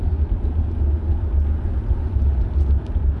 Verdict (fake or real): real